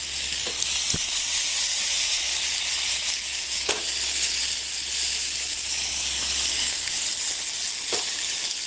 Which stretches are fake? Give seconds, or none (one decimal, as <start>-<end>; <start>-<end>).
3.3-4.4; 6.5-7.1